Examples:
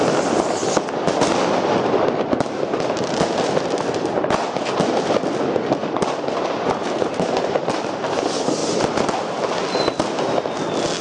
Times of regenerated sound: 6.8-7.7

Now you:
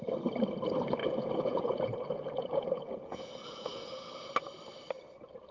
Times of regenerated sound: 1.0-4.3

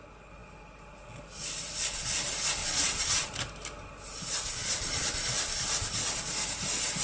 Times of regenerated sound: 2.6-3.3; 4.6-5.1

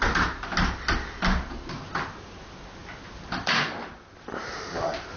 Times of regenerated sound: none

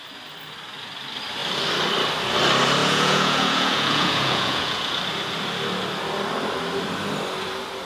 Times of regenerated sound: 2.8-5.0

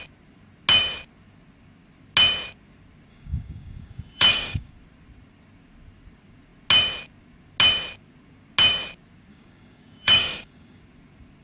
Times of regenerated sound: 3.1-4.7; 9.3-10.8

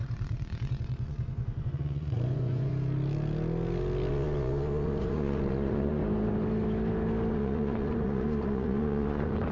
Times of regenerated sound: 0.0-2.7; 4.1-6.0; 7.3-9.5

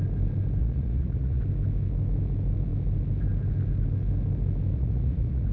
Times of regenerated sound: 0.6-1.4; 4.7-5.5